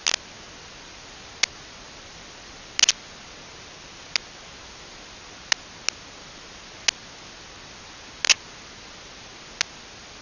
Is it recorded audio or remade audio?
recorded